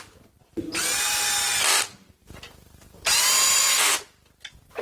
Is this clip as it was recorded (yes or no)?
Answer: yes